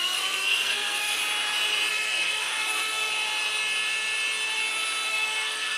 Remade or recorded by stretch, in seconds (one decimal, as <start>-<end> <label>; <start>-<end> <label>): 0.0-1.2 remade; 1.2-1.9 recorded; 1.9-3.1 remade; 3.1-5.1 recorded; 5.1-5.8 remade